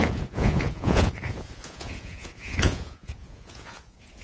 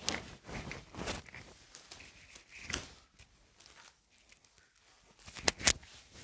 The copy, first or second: first